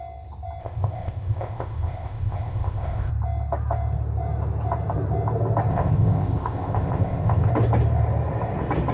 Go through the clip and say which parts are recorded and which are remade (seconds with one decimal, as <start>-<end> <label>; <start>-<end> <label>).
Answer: 0.0-0.6 recorded; 0.6-3.1 remade; 3.1-5.7 recorded; 5.7-7.5 remade; 7.5-8.9 recorded